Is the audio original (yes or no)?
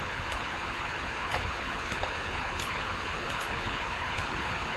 no